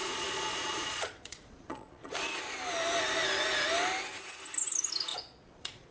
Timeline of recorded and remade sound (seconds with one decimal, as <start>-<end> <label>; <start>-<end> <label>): 0.0-2.1 remade; 2.1-5.1 recorded; 5.1-5.9 remade